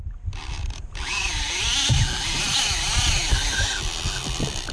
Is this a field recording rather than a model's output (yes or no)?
yes